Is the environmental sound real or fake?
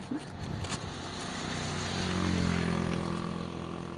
real